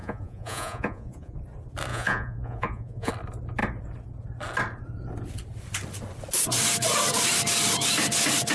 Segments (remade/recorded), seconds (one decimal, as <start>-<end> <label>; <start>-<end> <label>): 0.0-1.4 remade; 1.4-1.9 recorded; 1.9-3.1 remade; 3.1-8.5 recorded

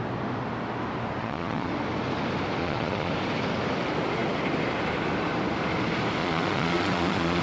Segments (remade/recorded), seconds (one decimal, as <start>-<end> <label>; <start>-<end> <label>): 0.0-1.2 recorded; 1.2-1.7 remade; 1.7-2.6 recorded; 2.6-3.1 remade; 3.1-6.2 recorded; 6.2-7.4 remade

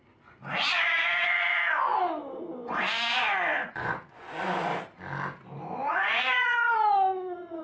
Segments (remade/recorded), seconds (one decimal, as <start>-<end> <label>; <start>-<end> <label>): 0.0-0.6 recorded; 0.6-1.9 remade; 1.9-3.1 recorded; 3.1-4.7 remade; 4.7-5.9 recorded; 5.9-7.6 remade

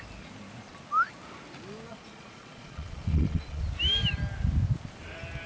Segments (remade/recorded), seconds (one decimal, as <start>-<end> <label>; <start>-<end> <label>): 0.0-1.9 recorded; 1.9-3.6 remade; 3.6-5.5 recorded

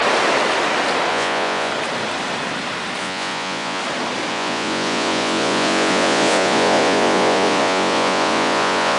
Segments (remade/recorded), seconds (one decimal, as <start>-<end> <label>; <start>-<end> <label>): 0.0-1.1 recorded; 1.1-1.7 remade; 1.7-3.0 recorded; 3.0-3.8 remade; 3.8-4.3 recorded; 4.3-9.0 remade

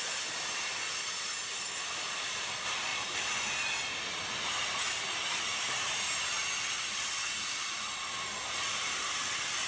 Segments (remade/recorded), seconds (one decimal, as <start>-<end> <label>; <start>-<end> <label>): 0.0-9.7 recorded

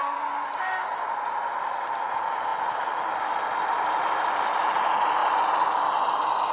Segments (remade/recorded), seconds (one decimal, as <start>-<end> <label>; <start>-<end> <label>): 0.0-6.5 recorded